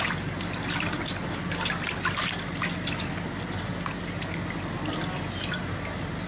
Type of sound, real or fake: real